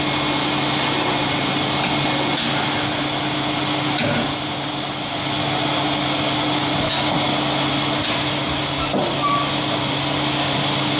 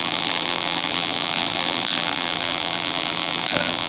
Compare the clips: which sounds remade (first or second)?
second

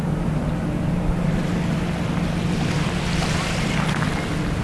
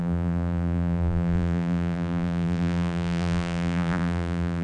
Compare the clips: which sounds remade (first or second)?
second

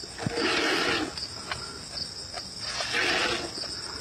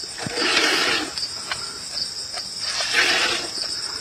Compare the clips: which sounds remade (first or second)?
second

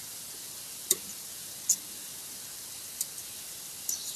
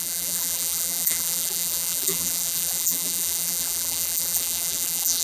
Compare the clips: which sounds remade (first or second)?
second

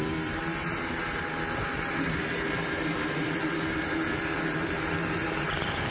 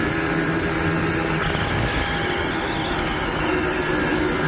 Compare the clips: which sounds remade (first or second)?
first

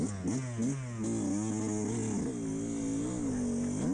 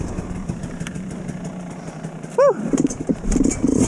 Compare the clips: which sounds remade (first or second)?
second